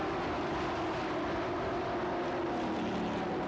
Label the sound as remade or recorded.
recorded